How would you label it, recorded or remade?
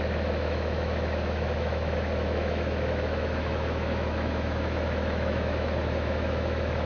remade